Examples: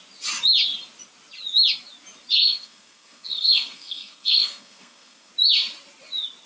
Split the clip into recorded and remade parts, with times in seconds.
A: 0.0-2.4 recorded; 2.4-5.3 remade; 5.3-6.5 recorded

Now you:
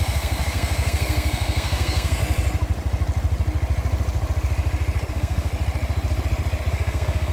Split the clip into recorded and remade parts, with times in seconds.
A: 0.0-2.2 remade; 2.2-5.1 recorded; 5.1-5.5 remade; 5.5-6.7 recorded; 6.7-7.3 remade

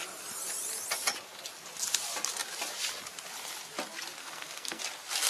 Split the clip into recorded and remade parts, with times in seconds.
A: 0.0-4.2 recorded; 4.2-4.8 remade; 4.8-5.3 recorded

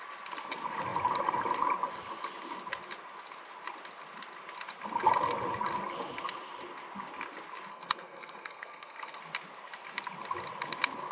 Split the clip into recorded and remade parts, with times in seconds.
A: 0.0-7.7 recorded; 7.7-9.2 remade; 9.2-11.1 recorded

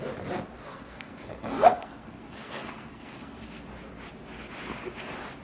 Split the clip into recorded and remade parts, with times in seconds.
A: 0.0-0.7 recorded; 0.7-3.6 remade; 3.6-5.4 recorded